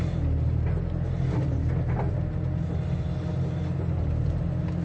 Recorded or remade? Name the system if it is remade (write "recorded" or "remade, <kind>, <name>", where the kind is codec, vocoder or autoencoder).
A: recorded